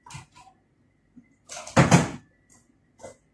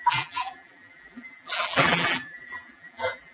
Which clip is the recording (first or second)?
first